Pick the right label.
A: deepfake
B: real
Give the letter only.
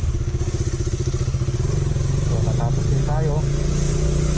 B